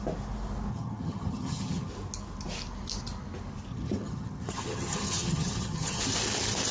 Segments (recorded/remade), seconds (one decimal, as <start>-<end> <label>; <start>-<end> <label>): 0.0-0.7 recorded; 0.7-1.9 remade; 1.9-3.7 recorded; 3.7-6.0 remade; 6.0-6.7 recorded